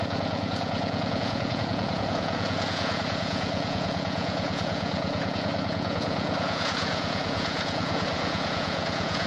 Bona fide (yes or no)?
no